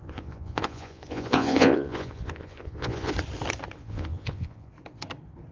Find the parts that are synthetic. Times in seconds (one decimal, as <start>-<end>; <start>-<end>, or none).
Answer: 0.0-3.1; 3.8-4.7